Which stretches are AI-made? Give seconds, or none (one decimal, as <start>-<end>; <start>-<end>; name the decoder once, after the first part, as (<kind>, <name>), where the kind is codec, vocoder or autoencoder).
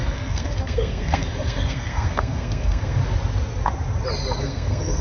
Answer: 0.0-3.0 (codec, SNAC); 4.4-5.0